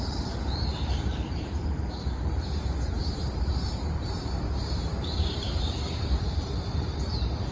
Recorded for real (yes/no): no